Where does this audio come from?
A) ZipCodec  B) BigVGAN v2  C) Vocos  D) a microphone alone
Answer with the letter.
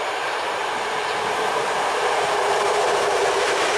B